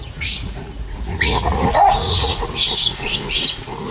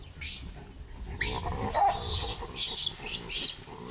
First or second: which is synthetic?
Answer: first